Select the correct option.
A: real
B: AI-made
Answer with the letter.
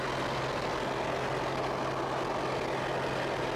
A